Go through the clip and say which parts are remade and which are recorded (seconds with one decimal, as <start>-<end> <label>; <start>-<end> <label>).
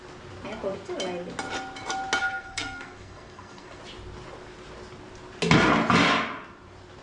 0.0-2.2 recorded; 2.2-3.8 remade; 3.8-7.0 recorded